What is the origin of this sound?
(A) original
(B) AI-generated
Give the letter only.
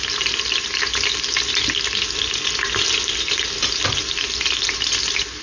A